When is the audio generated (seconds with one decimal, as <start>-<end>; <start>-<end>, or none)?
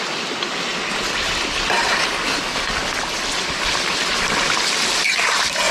none